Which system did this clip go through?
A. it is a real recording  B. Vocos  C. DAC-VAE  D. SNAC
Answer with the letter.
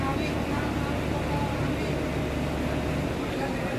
A